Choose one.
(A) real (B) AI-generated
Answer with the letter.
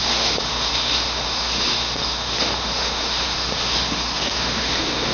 B